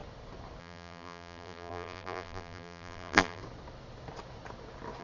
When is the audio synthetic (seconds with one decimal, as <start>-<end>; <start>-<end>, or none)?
0.6-3.4

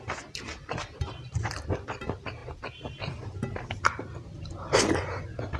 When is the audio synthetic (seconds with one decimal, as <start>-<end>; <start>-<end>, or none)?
none

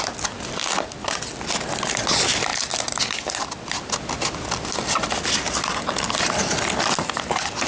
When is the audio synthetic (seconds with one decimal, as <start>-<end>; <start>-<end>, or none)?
0.6-1.2

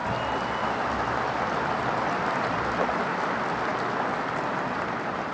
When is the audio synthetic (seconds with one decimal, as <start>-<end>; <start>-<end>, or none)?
0.0-3.0; 3.7-5.3

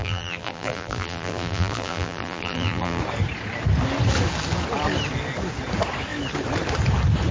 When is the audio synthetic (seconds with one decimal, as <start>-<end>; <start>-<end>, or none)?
0.0-3.0

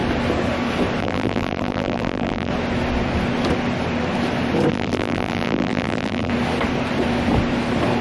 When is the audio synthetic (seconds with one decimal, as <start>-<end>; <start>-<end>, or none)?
1.0-2.5; 4.7-6.3

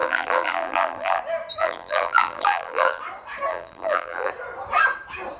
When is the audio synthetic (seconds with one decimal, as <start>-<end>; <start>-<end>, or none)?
0.0-1.2; 1.6-3.0; 3.5-4.3